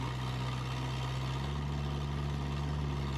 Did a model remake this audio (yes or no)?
no